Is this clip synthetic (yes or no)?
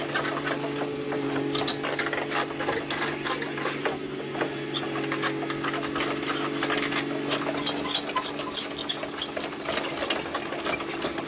no